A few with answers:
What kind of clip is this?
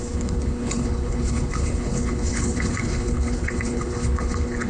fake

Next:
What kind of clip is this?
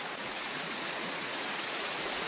fake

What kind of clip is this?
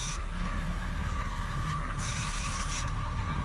fake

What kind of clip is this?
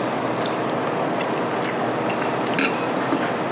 real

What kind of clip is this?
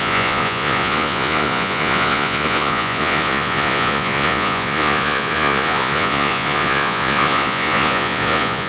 fake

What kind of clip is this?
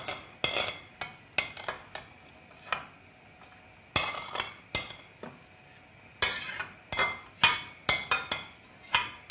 real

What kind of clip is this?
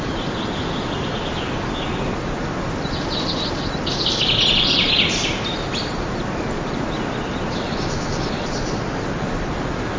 real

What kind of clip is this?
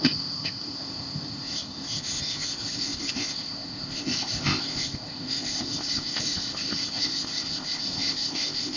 fake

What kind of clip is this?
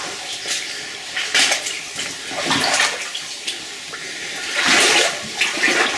real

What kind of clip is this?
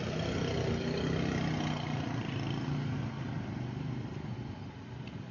real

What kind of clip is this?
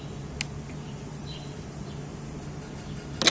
real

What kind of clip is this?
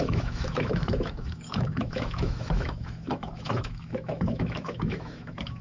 fake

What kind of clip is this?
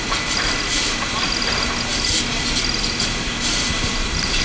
real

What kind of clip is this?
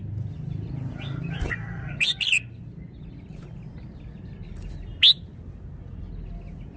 real